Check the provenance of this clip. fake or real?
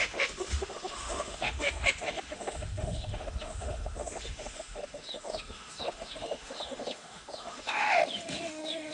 fake